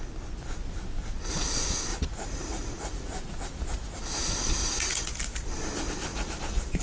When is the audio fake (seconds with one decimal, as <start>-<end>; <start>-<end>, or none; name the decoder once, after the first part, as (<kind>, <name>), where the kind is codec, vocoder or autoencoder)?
1.9-4.0 (vocoder, Vocos); 4.6-5.2; 6.1-6.8